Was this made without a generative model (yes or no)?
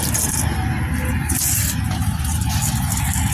yes